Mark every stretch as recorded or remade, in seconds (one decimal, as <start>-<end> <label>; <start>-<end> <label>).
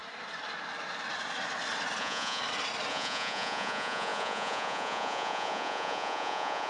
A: 0.0-2.0 recorded; 2.0-2.4 remade; 2.4-2.9 recorded; 2.9-6.7 remade